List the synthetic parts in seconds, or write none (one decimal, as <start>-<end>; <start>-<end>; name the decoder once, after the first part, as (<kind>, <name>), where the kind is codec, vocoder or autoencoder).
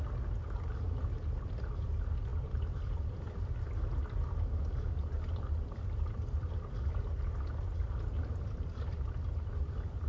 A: none